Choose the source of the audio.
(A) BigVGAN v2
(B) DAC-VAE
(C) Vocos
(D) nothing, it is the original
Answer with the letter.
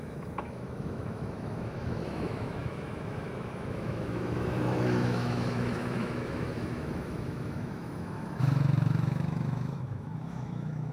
B